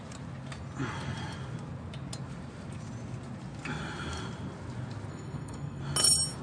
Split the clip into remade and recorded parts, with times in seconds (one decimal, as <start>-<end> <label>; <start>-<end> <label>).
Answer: 0.0-5.1 recorded; 5.1-5.8 remade; 5.8-6.4 recorded